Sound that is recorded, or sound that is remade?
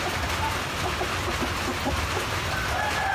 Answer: recorded